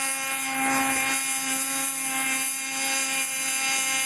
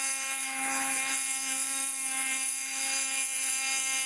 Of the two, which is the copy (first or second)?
second